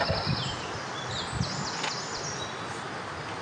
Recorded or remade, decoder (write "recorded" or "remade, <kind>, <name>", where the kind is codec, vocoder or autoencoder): recorded